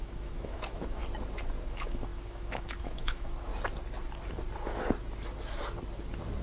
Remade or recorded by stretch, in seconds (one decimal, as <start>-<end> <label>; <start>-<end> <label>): 0.0-1.0 remade; 1.0-1.6 recorded; 1.6-3.5 remade; 3.5-6.4 recorded